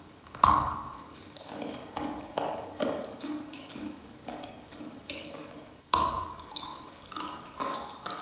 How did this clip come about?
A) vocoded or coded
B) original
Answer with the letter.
A